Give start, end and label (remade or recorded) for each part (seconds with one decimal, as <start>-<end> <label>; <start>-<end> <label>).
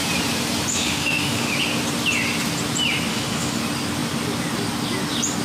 0.0-0.7 recorded; 0.7-1.5 remade; 1.5-3.1 recorded; 3.1-3.6 remade; 3.6-5.4 recorded